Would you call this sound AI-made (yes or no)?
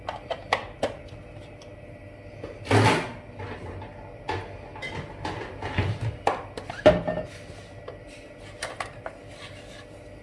no